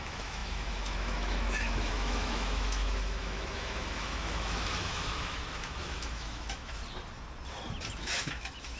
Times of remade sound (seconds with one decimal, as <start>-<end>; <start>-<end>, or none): 0.0-6.8; 8.0-8.8